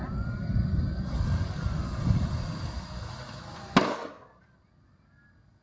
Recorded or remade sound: recorded